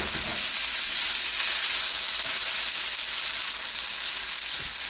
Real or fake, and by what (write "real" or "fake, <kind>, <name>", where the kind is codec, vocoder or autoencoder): real